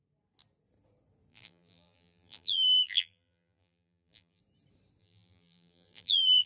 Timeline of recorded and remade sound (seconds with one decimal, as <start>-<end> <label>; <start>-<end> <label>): 0.0-1.3 recorded; 1.3-4.4 remade; 4.4-5.0 recorded; 5.0-6.5 remade